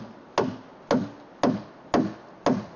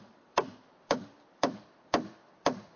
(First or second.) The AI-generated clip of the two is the second